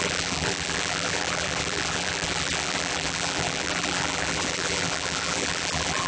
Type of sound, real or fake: fake